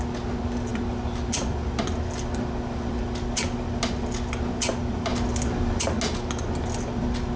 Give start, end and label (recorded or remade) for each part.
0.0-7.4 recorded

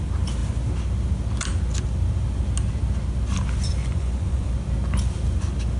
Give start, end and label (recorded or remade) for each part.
0.0-3.8 recorded; 3.8-4.5 remade; 4.5-5.8 recorded